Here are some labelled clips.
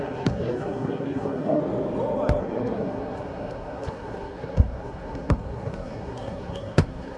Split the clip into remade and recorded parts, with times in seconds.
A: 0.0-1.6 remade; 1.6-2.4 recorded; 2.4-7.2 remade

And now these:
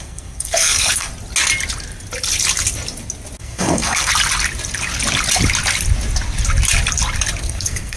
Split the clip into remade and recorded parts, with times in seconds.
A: 0.0-1.1 remade; 1.1-3.4 recorded; 3.4-4.1 remade; 4.1-7.4 recorded; 7.4-8.0 remade

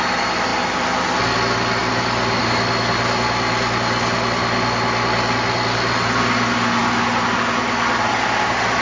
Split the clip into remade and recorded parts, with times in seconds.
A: 0.0-8.8 recorded

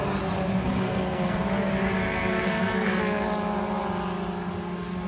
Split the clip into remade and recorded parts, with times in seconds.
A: 0.0-0.7 recorded; 0.7-1.4 remade; 1.4-2.2 recorded; 2.2-3.0 remade; 3.0-5.1 recorded

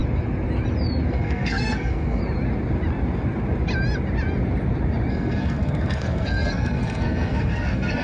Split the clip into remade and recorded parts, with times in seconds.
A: 0.0-1.1 recorded; 1.1-2.2 remade; 2.2-5.1 recorded; 5.1-8.0 remade

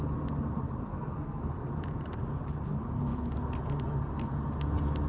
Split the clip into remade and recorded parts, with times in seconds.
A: 0.0-0.9 recorded; 0.9-1.4 remade; 1.4-5.1 recorded